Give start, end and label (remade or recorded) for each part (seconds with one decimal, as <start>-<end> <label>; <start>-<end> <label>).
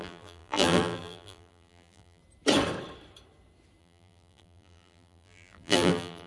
0.0-2.2 remade; 2.2-3.8 recorded; 3.8-6.3 remade